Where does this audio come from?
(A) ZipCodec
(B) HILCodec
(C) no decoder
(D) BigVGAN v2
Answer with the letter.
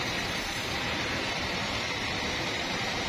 D